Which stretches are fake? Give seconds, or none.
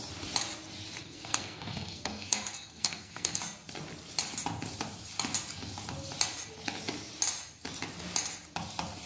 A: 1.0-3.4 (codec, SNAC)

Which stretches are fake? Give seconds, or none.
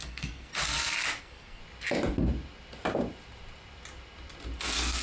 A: 0.0-0.5 (codec, SNAC); 1.2-1.6; 4.6-5.0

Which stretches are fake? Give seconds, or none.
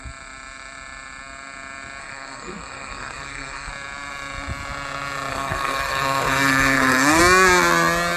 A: 2.0-3.7 (codec, SNAC); 5.3-7.2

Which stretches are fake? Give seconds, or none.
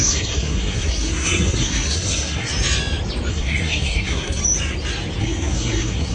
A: 0.0-2.5 (codec, SNAC); 3.3-4.4; 5.2-6.1